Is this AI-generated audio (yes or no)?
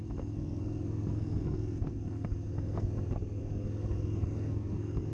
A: yes